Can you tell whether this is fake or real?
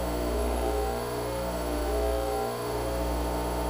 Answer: fake